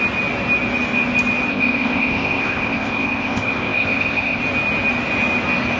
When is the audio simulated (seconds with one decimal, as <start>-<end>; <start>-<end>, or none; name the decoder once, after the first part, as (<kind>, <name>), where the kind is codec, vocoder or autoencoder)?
1.5-4.4 (codec, ZipCodec)